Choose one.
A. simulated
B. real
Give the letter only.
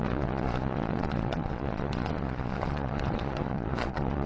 A